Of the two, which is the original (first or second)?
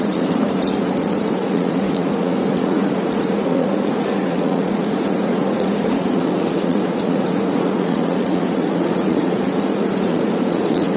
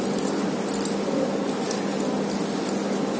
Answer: second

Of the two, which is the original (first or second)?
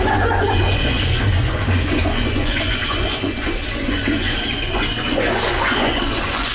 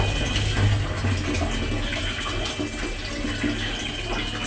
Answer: second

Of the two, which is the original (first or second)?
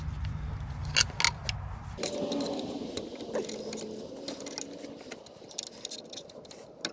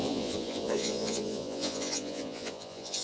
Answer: first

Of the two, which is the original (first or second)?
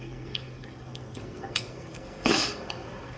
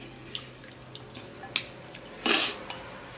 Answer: second